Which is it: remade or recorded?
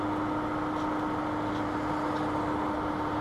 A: recorded